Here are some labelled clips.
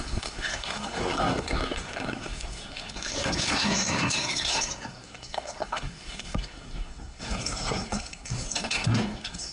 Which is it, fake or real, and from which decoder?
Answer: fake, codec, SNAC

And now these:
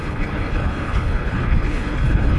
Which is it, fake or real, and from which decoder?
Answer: fake, codec, HILCodec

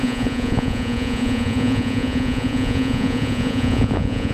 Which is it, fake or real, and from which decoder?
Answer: fake, vocoder, Vocos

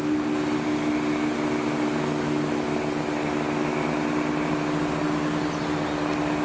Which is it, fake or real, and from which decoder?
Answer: real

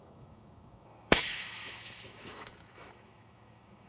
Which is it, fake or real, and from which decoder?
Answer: fake, autoencoder, DAC-VAE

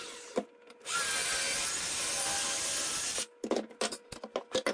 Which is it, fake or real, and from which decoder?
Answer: real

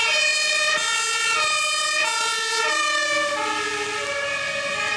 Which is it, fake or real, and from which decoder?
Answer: real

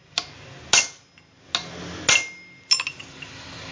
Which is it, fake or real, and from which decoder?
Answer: real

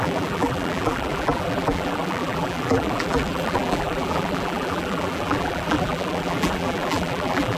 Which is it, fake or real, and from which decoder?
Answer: fake, vocoder, BigVGAN v2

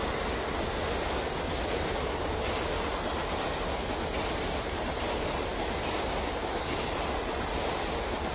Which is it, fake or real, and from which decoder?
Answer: real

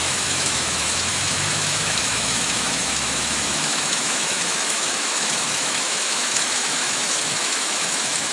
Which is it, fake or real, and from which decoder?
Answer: fake, autoencoder, DAC-VAE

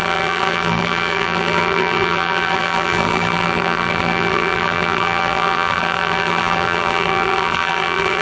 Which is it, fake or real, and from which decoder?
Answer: fake, vocoder, BigVGAN v2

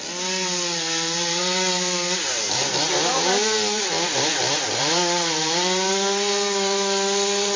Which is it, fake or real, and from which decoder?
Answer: fake, vocoder, BigVGAN v2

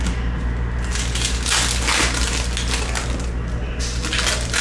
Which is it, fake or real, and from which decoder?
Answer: real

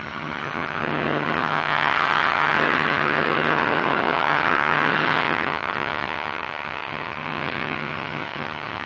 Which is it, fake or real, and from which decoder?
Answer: fake, vocoder, HiFi-GAN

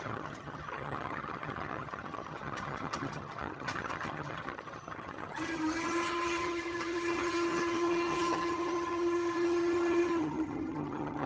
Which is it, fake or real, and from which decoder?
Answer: fake, vocoder, HiFi-GAN